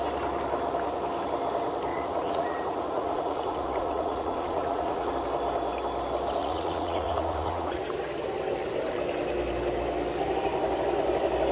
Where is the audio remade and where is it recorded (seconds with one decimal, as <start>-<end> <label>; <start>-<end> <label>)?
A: 0.0-1.9 recorded; 1.9-5.1 remade; 5.1-6.4 recorded; 6.4-7.8 remade; 7.8-11.5 recorded